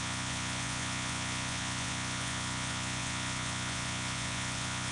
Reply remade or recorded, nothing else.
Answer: remade